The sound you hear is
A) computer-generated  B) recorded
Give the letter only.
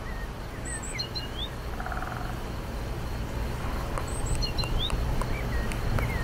B